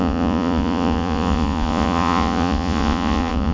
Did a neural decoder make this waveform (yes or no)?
yes